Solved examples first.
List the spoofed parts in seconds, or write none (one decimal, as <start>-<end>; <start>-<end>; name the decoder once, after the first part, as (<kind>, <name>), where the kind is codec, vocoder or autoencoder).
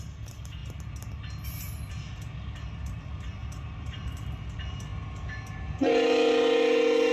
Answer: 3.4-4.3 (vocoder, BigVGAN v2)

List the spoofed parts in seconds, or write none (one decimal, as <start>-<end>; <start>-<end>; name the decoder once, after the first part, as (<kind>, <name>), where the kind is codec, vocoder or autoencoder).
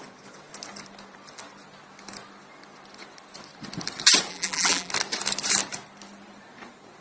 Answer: 4.3-4.9 (vocoder, BigVGAN v2)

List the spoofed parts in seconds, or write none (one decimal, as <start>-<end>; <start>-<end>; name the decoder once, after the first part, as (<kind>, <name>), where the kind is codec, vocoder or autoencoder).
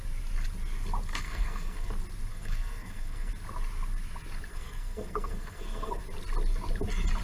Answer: 1.1-1.9 (codec, SNAC); 2.3-3.3; 4.5-6.0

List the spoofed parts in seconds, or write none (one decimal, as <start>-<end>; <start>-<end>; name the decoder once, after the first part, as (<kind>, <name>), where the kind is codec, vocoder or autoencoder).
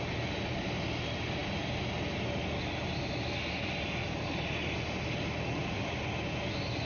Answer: none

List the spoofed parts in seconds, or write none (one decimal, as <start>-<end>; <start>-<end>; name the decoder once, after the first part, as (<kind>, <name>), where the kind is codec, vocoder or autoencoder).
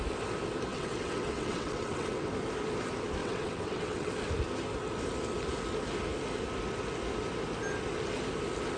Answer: 0.7-2.3 (vocoder, WaveNeXt); 3.2-4.1